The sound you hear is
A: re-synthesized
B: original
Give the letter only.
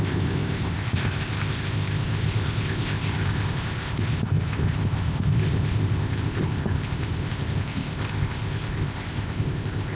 A